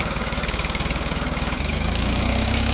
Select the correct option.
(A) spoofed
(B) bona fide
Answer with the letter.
A